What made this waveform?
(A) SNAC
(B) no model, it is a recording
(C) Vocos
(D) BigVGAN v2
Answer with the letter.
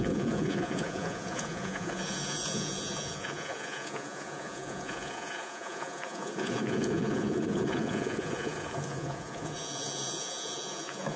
C